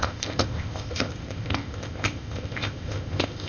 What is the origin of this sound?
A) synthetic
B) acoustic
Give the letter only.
A